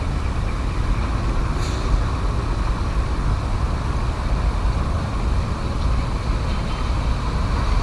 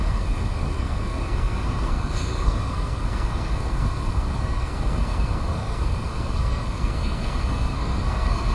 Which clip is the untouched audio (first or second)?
first